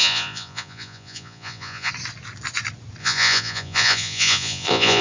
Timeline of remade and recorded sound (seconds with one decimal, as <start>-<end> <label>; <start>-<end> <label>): 0.0-1.9 remade; 1.9-3.0 recorded; 3.0-5.0 remade